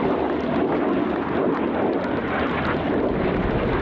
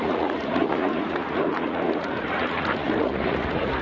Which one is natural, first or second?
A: first